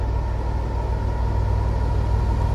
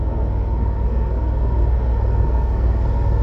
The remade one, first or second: second